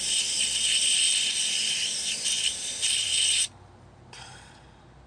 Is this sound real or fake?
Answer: fake